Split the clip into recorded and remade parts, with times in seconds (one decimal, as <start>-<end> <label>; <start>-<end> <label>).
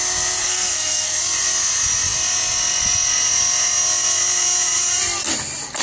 0.0-0.4 recorded; 0.4-1.2 remade; 1.2-5.8 recorded